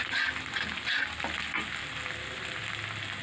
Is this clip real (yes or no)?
yes